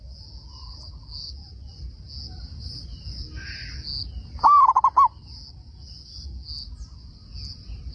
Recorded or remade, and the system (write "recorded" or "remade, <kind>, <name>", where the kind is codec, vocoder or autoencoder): recorded